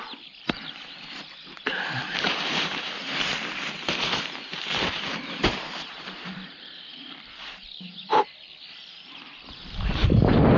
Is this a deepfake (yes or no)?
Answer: yes